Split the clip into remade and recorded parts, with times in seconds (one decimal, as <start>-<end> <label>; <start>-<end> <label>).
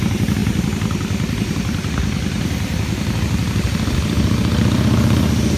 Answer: 0.0-5.6 remade